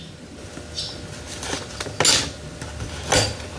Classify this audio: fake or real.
real